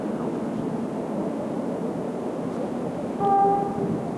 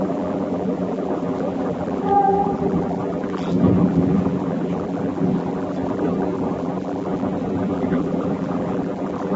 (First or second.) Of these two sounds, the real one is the first